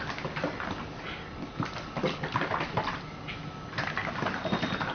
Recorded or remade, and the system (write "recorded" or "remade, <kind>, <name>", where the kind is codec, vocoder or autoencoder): recorded